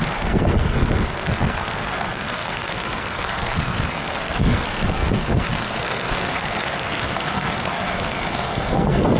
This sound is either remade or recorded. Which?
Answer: remade